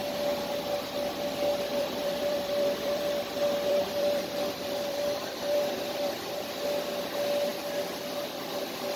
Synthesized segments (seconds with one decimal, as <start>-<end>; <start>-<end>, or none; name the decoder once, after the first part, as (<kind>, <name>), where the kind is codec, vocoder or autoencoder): 1.7-6.4 (vocoder, BigVGAN v2)